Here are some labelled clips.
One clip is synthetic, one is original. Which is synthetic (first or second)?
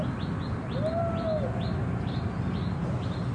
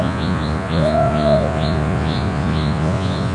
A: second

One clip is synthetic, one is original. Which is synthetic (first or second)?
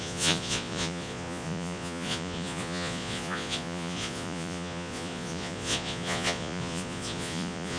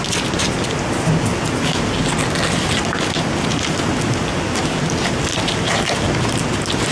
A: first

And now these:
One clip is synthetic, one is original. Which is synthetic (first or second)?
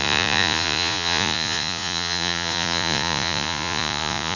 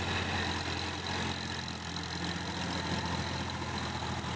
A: first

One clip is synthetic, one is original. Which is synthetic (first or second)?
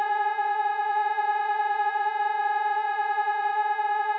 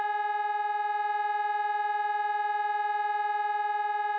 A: first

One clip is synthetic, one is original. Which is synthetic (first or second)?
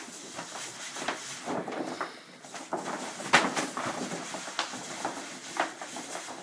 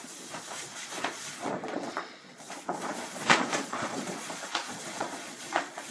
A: second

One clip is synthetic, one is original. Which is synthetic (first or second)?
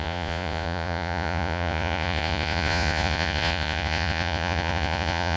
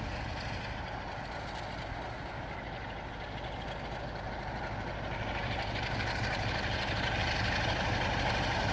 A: first